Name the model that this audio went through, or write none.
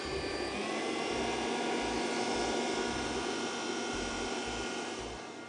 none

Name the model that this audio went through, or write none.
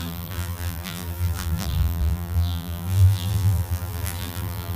vocoder, BigVGAN v2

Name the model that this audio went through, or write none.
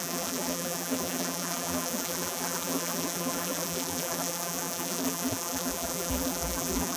vocoder, BigVGAN v2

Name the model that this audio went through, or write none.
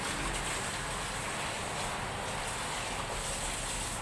none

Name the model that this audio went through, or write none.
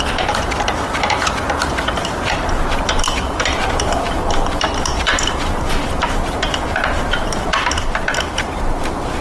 vocoder, BigVGAN v2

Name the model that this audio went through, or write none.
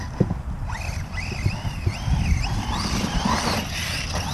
vocoder, BigVGAN v2